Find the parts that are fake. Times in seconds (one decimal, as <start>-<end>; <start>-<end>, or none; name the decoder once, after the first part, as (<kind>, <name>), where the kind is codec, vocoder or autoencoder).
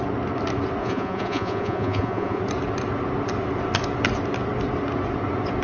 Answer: 0.8-2.4 (vocoder, Vocos)